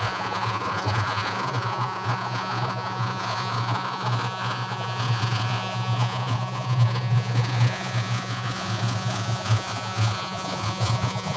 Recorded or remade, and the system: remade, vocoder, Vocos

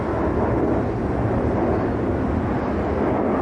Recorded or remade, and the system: recorded